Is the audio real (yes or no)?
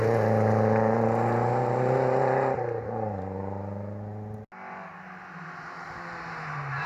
yes